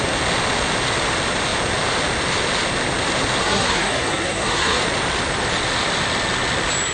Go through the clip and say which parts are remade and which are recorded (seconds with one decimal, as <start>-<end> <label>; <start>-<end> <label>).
0.0-3.4 recorded; 3.4-4.8 remade; 4.8-6.9 recorded